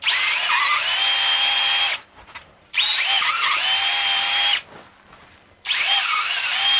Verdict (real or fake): real